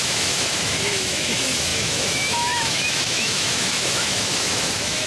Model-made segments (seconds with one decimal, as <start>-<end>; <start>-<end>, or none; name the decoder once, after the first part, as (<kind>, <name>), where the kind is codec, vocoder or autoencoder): 0.0-5.1 (autoencoder, DAC-VAE)